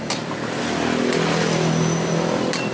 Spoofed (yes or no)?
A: no